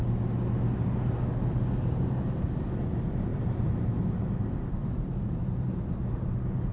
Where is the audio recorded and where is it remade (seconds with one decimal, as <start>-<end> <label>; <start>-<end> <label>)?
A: 0.0-3.3 recorded; 3.3-4.0 remade; 4.0-4.8 recorded; 4.8-5.4 remade; 5.4-6.7 recorded